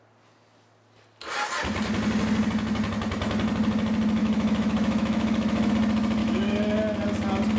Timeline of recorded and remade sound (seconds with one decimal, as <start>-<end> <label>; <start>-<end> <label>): 0.0-4.2 recorded; 4.2-5.7 remade; 5.7-6.2 recorded; 6.2-6.8 remade; 6.8-7.6 recorded